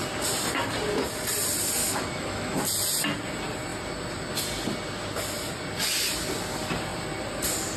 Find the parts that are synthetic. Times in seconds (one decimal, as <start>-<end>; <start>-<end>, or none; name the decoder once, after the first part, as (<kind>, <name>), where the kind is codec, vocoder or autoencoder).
1.8-2.6 (autoencoder, DAC-VAE)